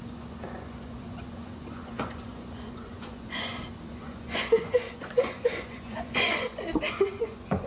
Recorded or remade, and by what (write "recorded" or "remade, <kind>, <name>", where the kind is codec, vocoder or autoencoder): remade, vocoder, Vocos